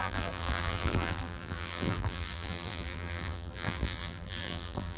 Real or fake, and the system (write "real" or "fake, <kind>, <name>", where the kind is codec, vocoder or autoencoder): fake, vocoder, BigVGAN v2